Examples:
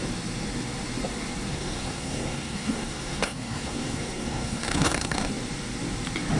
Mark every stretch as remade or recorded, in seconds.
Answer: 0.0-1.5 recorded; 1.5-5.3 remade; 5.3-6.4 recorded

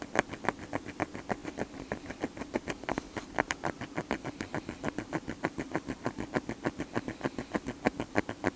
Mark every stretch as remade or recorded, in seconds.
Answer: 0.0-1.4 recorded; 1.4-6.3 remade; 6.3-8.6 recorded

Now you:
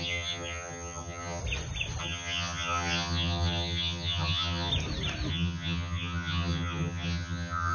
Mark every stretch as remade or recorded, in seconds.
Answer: 0.0-1.4 remade; 1.4-2.0 recorded; 2.0-4.7 remade; 4.7-5.3 recorded; 5.3-7.7 remade